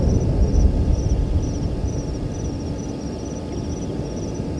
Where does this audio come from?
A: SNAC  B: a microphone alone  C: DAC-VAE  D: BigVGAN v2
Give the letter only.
D